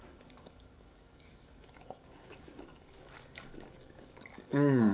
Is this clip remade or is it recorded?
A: remade